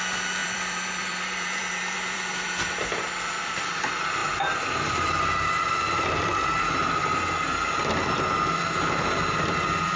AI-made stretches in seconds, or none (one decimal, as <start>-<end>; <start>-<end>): 0.4-3.6; 4.2-7.0